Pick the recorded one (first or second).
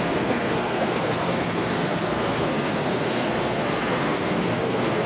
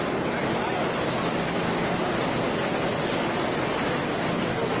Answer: second